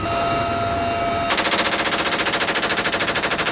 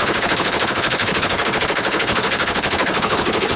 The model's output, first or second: second